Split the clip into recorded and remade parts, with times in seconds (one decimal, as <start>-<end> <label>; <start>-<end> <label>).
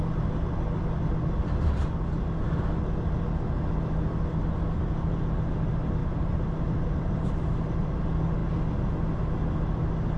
0.0-6.0 recorded; 6.0-8.0 remade; 8.0-10.2 recorded